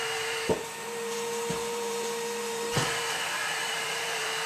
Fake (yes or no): yes